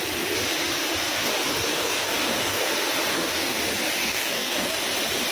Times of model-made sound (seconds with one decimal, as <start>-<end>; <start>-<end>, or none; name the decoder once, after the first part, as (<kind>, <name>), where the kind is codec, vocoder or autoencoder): 1.6-2.7 (codec, DAC); 3.1-3.6; 4.0-4.8